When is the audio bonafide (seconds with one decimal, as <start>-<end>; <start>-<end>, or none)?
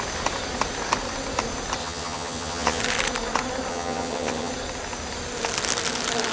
0.0-1.8; 2.8-3.7; 4.5-6.3